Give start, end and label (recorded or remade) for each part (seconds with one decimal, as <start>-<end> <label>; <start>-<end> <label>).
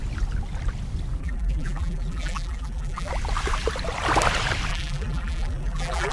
0.0-1.2 recorded; 1.2-3.1 remade; 3.1-4.7 recorded; 4.7-6.1 remade